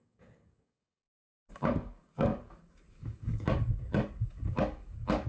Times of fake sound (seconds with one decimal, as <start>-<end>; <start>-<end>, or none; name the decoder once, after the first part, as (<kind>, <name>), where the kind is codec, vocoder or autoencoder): 0.0-5.3 (codec, DAC)

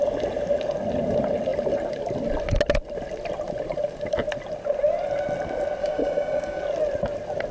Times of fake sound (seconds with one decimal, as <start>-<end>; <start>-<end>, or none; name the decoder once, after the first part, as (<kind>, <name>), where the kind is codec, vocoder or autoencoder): 5.8-6.6 (codec, DAC)